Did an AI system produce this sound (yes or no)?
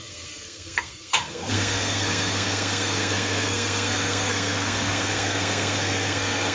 yes